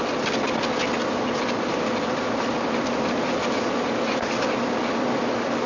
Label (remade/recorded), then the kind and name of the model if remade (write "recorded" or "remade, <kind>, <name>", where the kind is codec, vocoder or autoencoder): recorded